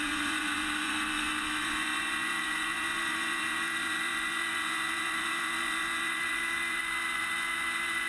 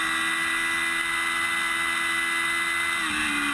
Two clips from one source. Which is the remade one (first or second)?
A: first